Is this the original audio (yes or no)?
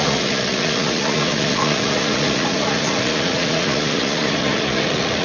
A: no